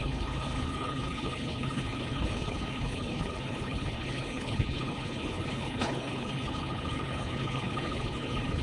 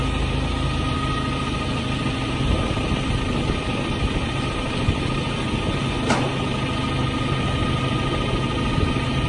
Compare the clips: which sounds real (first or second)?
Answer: second